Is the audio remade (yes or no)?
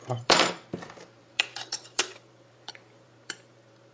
yes